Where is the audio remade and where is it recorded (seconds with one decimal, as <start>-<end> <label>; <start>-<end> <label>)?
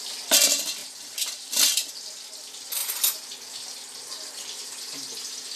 0.0-2.8 remade; 2.8-4.1 recorded; 4.1-5.6 remade